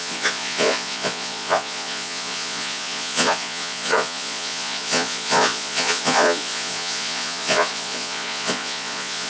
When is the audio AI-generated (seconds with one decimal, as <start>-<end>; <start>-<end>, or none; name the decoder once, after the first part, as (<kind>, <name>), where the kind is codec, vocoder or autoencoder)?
0.0-9.3 (vocoder, Vocos)